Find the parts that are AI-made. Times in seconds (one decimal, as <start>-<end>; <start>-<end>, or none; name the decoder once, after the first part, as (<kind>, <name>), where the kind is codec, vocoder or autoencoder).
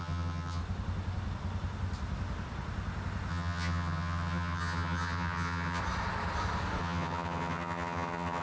0.0-0.6 (vocoder, HiFi-GAN); 3.3-5.8; 6.8-8.4